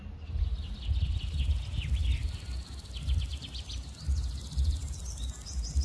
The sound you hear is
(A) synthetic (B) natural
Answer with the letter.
B